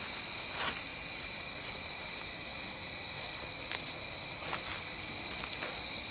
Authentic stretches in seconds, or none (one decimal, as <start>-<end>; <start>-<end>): 0.0-0.9; 1.4-6.1